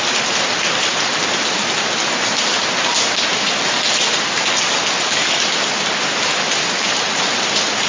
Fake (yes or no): no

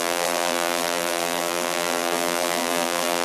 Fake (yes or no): yes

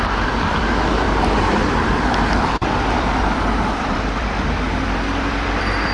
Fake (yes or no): yes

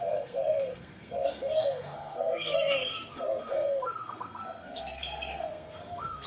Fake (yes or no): yes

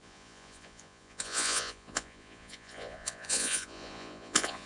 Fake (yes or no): yes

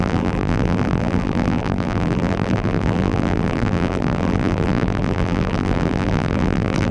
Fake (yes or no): yes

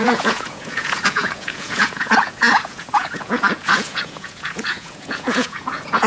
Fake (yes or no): yes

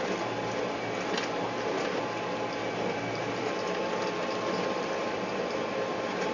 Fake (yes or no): no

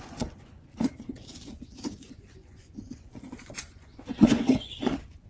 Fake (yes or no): yes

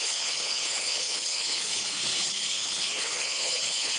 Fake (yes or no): yes